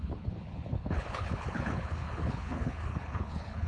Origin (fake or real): fake